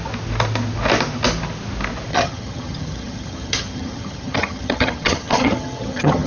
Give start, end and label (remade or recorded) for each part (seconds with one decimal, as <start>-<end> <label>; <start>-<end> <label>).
0.0-2.1 recorded; 2.1-6.3 remade